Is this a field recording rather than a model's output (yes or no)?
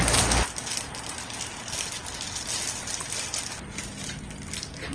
yes